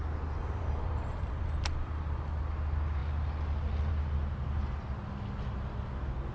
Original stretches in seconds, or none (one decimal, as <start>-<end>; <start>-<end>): 0.0-0.4; 2.4-6.3